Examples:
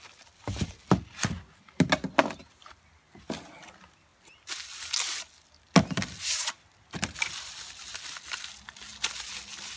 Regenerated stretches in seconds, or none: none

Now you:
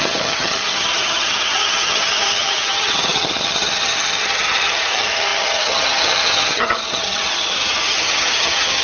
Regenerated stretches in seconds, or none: 0.0-8.8 (vocoder, HiFi-GAN)

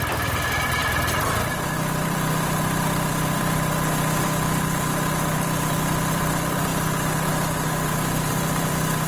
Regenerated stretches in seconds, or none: 0.0-6.7 (vocoder, BigVGAN v2); 7.9-9.1

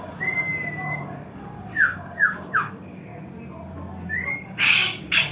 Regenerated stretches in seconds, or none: 0.0-0.4 (codec, DAC); 1.0-3.1; 4.3-5.3

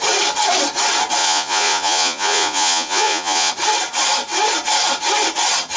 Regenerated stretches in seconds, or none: 1.2-3.5 (vocoder, Vocos)

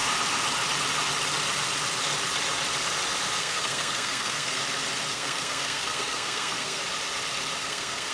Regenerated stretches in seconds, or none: 3.4-4.6 (codec, SNAC); 5.1-6.8; 7.6-8.1